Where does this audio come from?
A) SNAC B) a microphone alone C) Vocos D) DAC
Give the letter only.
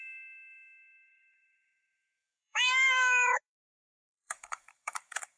D